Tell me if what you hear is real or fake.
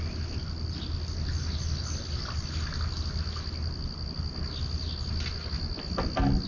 real